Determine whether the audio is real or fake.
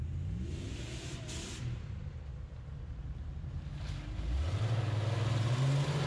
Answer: real